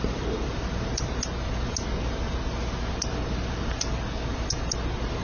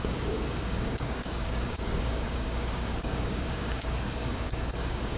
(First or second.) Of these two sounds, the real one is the first